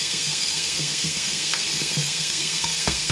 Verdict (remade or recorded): remade